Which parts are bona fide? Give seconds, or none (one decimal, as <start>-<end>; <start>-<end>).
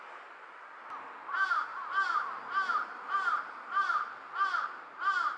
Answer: 0.0-1.7; 3.1-5.4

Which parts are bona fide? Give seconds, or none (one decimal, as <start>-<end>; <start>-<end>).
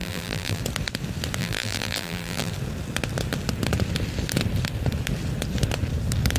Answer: 0.6-1.4; 2.5-6.4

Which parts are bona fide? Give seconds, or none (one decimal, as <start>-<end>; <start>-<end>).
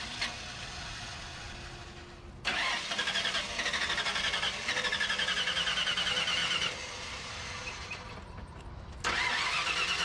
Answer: 0.0-2.5; 3.5-6.4; 8.6-10.0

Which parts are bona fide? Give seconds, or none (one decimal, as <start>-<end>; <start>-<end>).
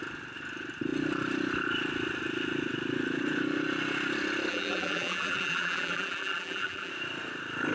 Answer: 0.0-4.5; 6.9-7.7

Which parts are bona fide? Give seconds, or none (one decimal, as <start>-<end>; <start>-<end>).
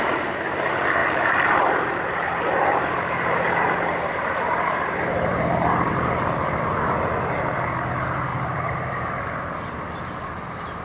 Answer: 0.0-1.0; 5.9-8.3; 9.2-10.8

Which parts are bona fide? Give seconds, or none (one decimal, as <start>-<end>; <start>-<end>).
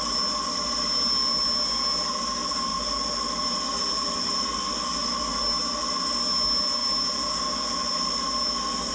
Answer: 0.0-8.9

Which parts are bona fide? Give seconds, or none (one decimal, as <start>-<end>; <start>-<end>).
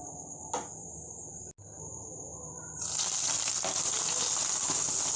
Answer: 0.0-5.2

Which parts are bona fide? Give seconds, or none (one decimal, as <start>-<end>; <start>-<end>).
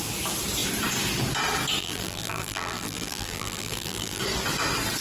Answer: 0.0-1.8; 4.2-5.0